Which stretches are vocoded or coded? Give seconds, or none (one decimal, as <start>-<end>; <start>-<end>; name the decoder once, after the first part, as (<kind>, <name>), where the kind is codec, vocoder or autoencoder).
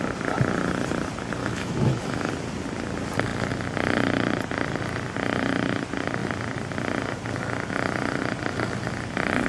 1.4-2.3 (autoencoder, DAC-VAE)